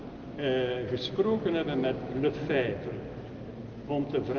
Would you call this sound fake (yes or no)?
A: no